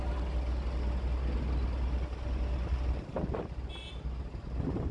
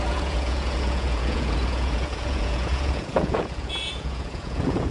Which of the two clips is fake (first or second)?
second